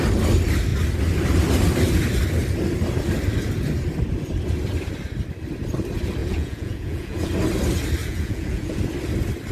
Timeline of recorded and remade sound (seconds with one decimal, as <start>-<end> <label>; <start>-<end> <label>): 0.0-6.2 recorded; 6.2-7.3 remade; 7.3-8.0 recorded; 8.0-8.8 remade; 8.8-9.5 recorded